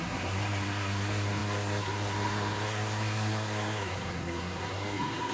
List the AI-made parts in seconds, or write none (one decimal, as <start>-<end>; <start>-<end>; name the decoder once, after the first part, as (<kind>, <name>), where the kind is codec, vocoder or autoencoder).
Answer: 0.0-5.3 (codec, SNAC)